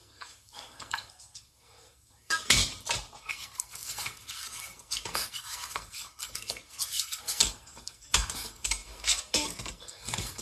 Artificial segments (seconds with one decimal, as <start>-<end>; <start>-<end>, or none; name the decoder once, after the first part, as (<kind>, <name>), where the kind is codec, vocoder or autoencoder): 0.0-2.6 (codec, SNAC); 3.2-10.4